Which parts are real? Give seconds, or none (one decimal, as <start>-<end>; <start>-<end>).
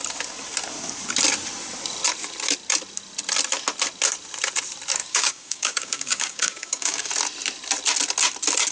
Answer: 0.0-5.0; 7.1-8.7